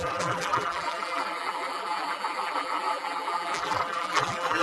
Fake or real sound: fake